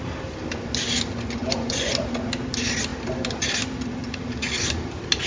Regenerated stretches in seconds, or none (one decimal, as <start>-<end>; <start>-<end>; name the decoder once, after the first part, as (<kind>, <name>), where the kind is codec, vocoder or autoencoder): 1.4-1.9 (vocoder, Vocos)